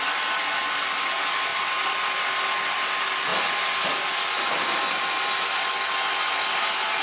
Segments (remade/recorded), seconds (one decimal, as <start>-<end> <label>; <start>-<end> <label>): 0.0-7.0 recorded